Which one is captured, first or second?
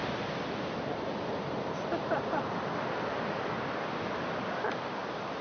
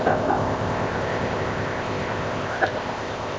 first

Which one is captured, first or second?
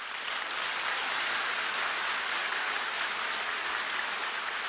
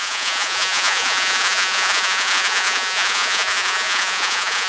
first